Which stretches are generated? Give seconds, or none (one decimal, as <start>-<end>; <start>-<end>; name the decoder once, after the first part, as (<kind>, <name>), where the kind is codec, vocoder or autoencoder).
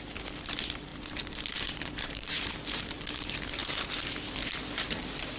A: 0.9-2.5 (vocoder, BigVGAN v2)